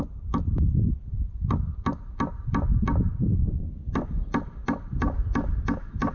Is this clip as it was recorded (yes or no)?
yes